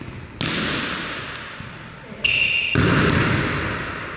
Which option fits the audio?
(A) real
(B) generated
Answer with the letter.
A